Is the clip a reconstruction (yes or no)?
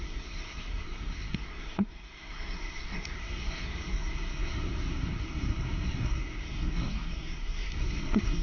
yes